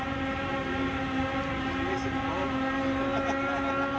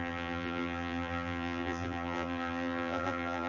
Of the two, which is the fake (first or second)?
second